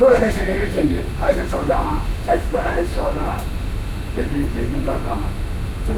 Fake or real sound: fake